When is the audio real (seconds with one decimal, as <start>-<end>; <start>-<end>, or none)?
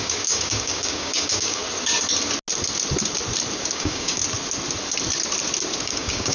1.6-3.7; 4.2-5.8